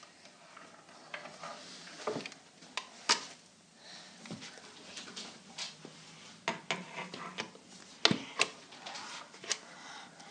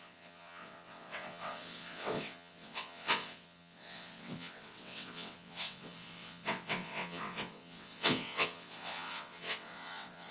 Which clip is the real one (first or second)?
first